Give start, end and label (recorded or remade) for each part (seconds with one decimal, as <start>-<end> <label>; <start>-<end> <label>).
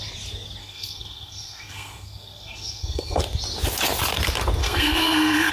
0.0-0.6 recorded; 0.6-3.2 remade; 3.2-4.6 recorded; 4.6-5.5 remade